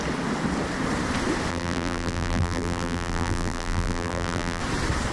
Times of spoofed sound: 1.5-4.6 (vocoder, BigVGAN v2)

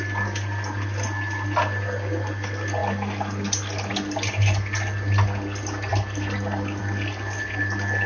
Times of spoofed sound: none

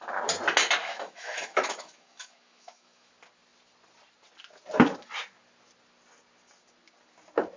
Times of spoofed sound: 0.8-3.1 (autoencoder, DAC-VAE)

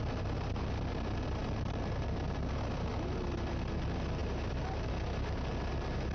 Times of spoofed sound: none

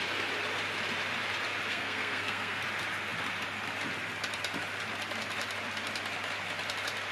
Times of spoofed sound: 1.7-2.6 (codec, SNAC)

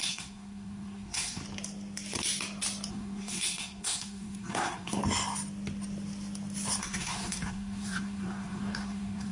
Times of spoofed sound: 0.0-1.4 (codec, SNAC); 2.9-5.0; 6.8-9.3